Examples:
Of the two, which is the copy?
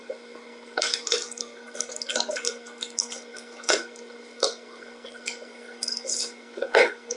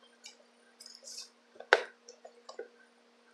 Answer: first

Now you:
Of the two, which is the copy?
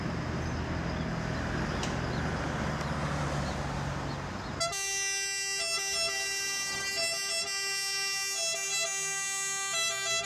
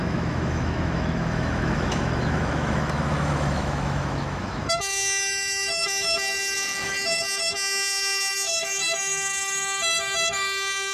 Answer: second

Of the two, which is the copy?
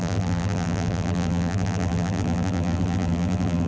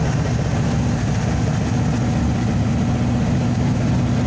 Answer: first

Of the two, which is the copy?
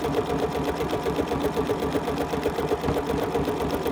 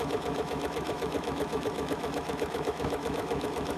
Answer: second